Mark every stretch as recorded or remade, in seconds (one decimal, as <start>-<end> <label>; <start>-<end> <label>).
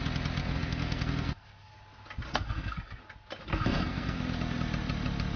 0.0-0.4 recorded; 0.4-1.7 remade; 1.7-2.3 recorded; 2.3-3.0 remade; 3.0-3.5 recorded; 3.5-4.2 remade; 4.2-5.4 recorded